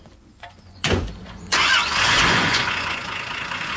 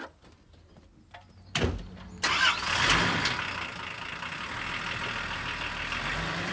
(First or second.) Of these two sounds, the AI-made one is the first